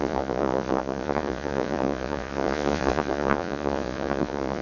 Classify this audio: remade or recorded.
remade